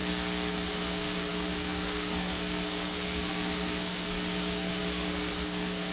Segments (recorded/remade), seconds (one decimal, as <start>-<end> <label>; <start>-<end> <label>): 0.0-0.5 recorded; 0.5-5.9 remade